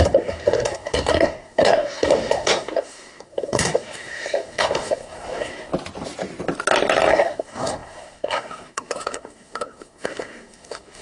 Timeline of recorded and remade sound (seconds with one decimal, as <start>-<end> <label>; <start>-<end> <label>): 0.0-5.7 remade; 5.7-7.1 recorded; 7.1-11.0 remade